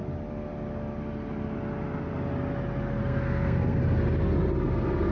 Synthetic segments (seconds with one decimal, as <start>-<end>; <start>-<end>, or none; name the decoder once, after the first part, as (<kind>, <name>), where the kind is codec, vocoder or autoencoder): 3.0-3.8 (codec, SNAC)